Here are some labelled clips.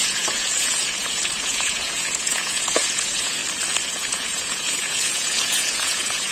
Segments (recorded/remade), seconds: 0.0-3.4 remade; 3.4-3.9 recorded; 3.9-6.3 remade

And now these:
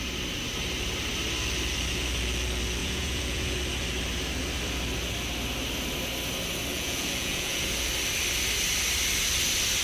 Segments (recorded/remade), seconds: 0.0-2.8 recorded; 2.8-3.6 remade; 3.6-6.7 recorded; 6.7-7.9 remade; 7.9-9.8 recorded

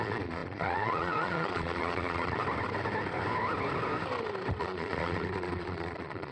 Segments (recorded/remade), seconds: 0.0-2.4 remade; 2.4-4.6 recorded; 4.6-6.3 remade